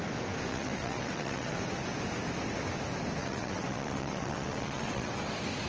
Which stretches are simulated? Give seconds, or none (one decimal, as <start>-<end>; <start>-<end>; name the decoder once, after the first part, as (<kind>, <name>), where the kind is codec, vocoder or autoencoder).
0.5-1.6 (vocoder, WaveNeXt); 3.2-5.1